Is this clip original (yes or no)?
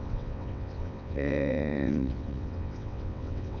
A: no